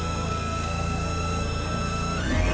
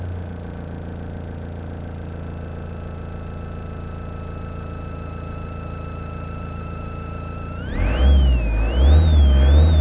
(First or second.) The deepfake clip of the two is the first